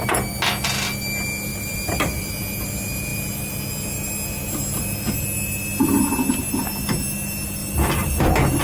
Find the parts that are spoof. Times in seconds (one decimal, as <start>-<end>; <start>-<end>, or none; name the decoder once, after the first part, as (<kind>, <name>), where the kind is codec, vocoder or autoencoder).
1.5-2.3 (vocoder, BigVGAN v2); 7.6-8.6